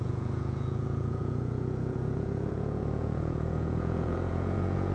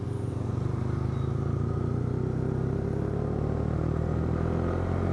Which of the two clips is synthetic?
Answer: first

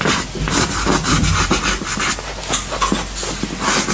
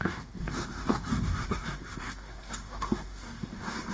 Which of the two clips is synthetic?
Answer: second